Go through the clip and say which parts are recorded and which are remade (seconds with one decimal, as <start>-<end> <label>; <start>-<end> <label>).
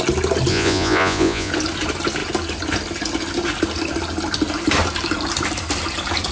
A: 0.0-0.5 recorded; 0.5-1.5 remade; 1.5-6.3 recorded